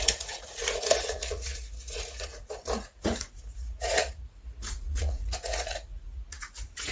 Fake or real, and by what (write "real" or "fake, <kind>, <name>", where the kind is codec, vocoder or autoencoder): fake, vocoder, Vocos